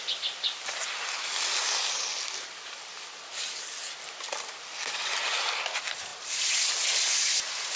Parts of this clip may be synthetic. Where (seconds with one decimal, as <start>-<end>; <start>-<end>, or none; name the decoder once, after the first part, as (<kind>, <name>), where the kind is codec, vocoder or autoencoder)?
none